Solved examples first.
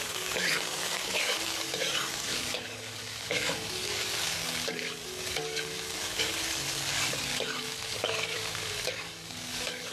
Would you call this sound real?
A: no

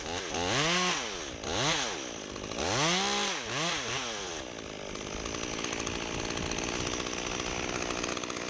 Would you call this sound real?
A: yes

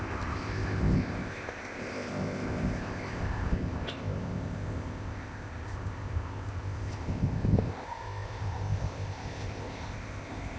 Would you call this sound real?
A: no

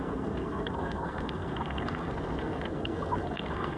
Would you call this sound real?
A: no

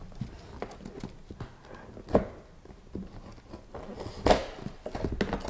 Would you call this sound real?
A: yes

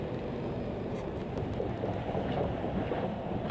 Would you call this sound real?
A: yes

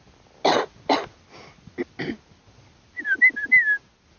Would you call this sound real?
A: yes